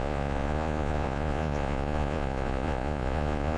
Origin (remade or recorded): remade